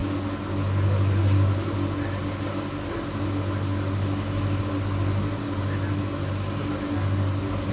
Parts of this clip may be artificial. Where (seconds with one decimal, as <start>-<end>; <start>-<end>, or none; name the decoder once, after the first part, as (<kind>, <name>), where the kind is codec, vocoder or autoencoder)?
none